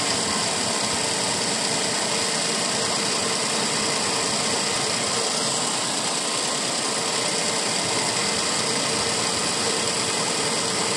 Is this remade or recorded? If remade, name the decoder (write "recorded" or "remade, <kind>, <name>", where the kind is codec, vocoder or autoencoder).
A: recorded